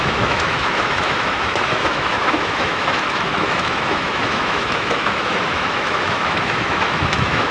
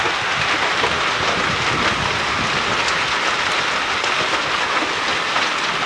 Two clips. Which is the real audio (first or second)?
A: second